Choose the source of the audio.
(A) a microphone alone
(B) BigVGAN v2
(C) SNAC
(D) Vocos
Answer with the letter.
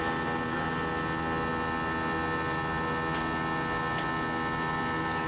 A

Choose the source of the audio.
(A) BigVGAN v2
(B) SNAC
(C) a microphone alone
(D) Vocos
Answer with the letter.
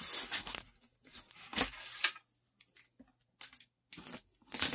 C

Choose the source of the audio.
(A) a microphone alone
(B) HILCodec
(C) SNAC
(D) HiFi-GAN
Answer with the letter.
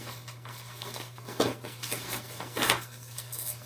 C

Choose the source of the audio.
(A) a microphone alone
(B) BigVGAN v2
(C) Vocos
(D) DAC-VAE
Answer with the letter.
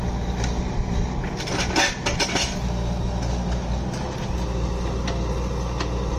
A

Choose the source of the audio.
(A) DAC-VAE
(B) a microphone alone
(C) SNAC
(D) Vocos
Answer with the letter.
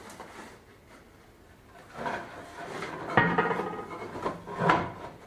B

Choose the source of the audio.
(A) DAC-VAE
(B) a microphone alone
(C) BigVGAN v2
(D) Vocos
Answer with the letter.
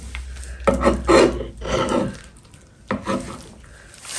B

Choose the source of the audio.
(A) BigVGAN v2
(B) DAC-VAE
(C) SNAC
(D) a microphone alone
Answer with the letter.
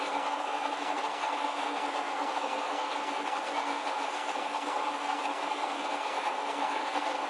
C